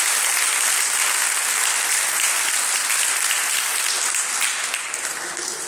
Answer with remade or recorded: recorded